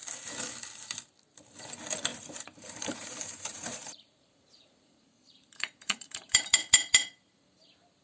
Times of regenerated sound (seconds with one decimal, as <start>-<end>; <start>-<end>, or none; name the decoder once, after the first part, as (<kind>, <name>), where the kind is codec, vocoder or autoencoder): 2.1-6.4 (vocoder, BigVGAN v2)

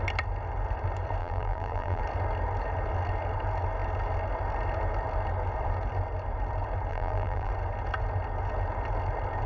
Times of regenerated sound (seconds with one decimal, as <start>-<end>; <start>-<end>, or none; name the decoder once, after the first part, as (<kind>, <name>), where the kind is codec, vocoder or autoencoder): 1.2-2.0 (vocoder, BigVGAN v2); 6.9-7.5

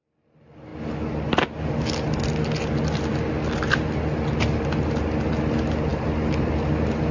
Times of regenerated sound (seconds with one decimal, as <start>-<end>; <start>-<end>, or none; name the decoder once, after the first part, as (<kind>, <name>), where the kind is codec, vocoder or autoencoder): 5.9-6.5 (vocoder, BigVGAN v2)